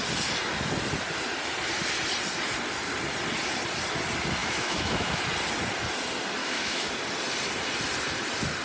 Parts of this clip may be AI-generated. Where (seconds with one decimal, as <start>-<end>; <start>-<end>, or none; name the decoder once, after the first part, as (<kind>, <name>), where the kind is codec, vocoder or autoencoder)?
4.4-5.2 (autoencoder, DAC-VAE); 6.4-6.9